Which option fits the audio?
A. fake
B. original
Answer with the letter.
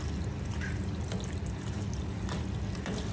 B